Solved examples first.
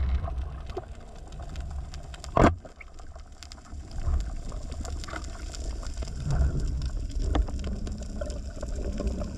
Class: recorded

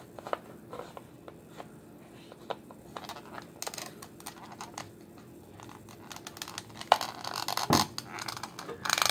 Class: recorded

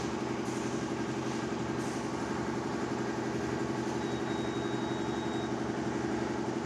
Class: recorded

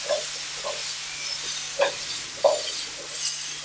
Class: recorded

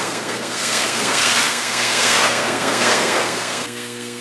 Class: remade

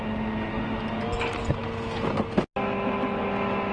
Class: recorded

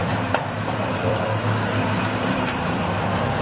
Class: remade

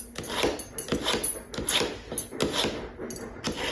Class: recorded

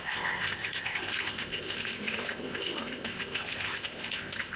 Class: remade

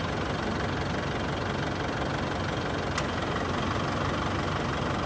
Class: recorded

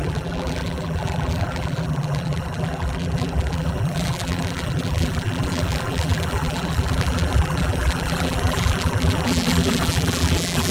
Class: remade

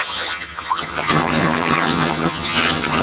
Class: remade